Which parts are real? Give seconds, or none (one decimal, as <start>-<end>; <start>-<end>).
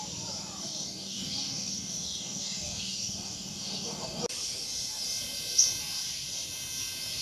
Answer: 0.0-0.6; 4.2-7.2